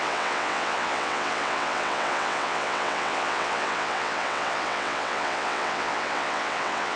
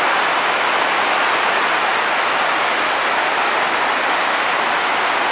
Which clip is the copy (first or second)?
first